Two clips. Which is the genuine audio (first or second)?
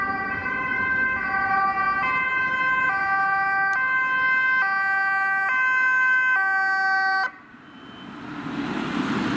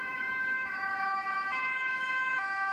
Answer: first